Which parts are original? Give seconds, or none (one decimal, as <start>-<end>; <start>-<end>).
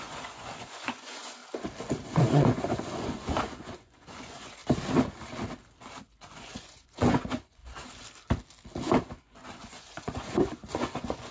1.4-2.0; 4.6-6.0; 7.6-9.2